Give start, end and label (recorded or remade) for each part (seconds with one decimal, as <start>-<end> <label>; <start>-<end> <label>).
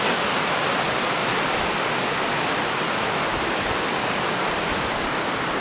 0.0-5.6 recorded